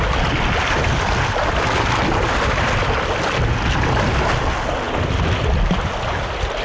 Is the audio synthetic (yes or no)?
no